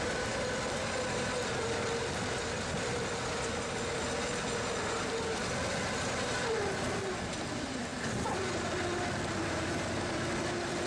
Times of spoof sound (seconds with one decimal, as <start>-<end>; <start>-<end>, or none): none